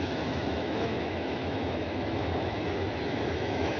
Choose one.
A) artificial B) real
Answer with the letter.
A